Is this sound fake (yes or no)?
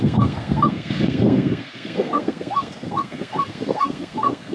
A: yes